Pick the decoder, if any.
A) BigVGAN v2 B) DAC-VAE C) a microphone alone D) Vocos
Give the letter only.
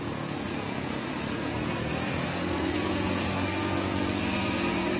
D